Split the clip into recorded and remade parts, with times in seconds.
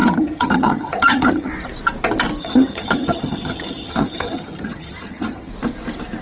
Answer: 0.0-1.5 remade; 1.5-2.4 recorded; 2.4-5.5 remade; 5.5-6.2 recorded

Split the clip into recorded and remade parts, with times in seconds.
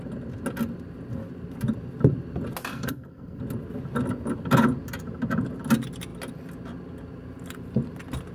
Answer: 0.0-2.7 recorded; 2.7-3.4 remade; 3.4-8.3 recorded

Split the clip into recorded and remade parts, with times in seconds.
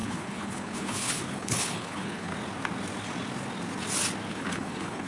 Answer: 0.0-2.3 remade; 2.3-4.3 recorded; 4.3-5.1 remade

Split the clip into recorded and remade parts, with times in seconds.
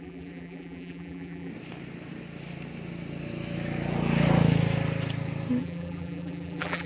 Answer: 0.0-1.5 remade; 1.5-5.6 recorded; 5.6-6.9 remade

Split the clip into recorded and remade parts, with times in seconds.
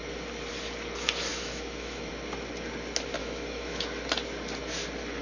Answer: 0.0-1.3 recorded; 1.3-2.1 remade; 2.1-3.2 recorded; 3.2-3.8 remade; 3.8-5.2 recorded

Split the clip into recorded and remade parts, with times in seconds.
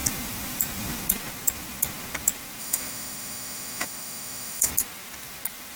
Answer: 0.0-2.6 recorded; 2.6-4.7 remade; 4.7-5.8 recorded